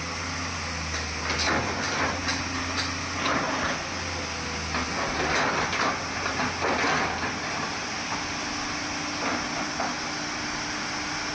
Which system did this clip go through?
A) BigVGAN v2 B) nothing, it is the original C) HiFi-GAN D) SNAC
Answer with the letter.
B